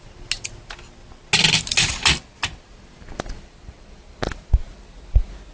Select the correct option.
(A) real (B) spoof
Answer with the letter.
A